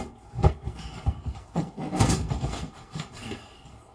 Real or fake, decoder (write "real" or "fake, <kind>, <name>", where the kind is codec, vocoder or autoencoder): fake, codec, SNAC